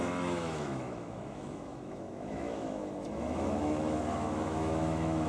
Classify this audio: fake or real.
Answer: fake